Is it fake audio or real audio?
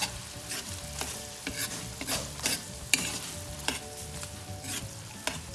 fake